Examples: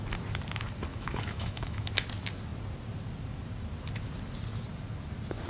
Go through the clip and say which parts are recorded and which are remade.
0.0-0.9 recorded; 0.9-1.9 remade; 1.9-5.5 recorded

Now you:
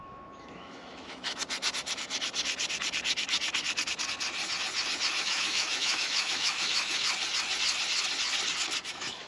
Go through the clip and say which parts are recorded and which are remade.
0.0-1.4 remade; 1.4-5.2 recorded; 5.2-7.1 remade; 7.1-8.9 recorded; 8.9-9.3 remade

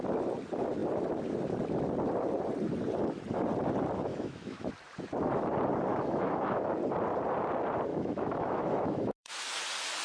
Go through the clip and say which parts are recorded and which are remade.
0.0-4.1 recorded; 4.1-4.7 remade; 4.7-5.9 recorded; 5.9-6.6 remade; 6.6-7.9 recorded; 7.9-9.3 remade; 9.3-10.0 recorded

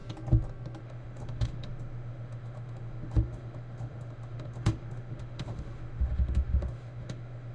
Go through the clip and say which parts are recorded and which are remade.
0.0-0.8 recorded; 0.8-7.5 remade

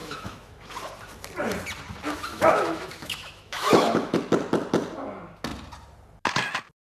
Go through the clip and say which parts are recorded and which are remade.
0.0-0.7 remade; 0.7-2.3 recorded; 2.3-4.2 remade; 4.2-6.9 recorded

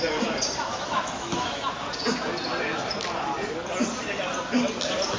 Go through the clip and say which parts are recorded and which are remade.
0.0-0.7 recorded; 0.7-1.6 remade; 1.6-5.2 recorded

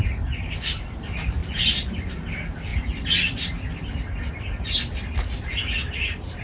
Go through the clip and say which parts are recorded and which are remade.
0.0-6.4 recorded